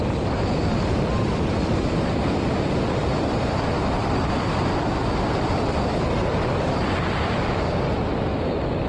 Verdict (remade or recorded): remade